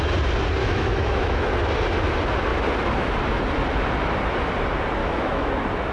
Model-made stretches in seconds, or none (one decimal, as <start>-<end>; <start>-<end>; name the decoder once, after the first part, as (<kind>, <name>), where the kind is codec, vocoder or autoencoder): 0.6-1.5 (autoencoder, DAC-VAE); 5.0-5.5